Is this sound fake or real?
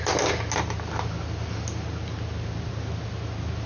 real